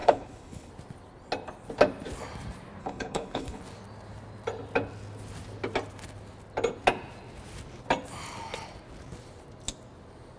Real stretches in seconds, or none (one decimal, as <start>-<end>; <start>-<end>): 0.7-2.8; 3.6-10.4